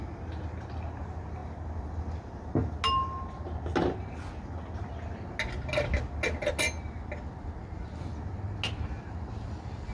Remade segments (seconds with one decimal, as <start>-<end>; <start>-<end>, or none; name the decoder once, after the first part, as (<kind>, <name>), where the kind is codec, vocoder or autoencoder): none